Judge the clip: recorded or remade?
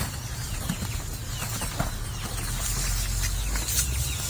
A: recorded